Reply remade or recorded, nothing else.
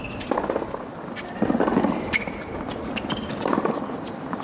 recorded